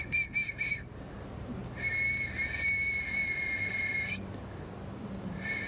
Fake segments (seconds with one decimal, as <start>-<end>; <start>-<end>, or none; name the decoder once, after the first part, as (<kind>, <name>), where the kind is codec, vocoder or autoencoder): 0.0-1.6 (vocoder, BigVGAN v2); 3.7-5.7